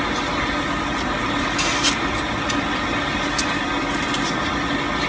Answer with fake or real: real